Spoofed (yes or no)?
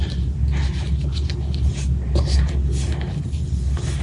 no